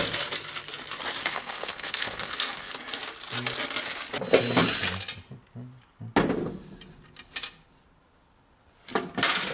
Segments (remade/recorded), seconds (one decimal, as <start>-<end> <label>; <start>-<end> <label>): 0.0-1.2 recorded; 1.2-2.7 remade; 2.7-9.5 recorded